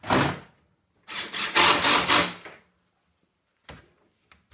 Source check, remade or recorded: recorded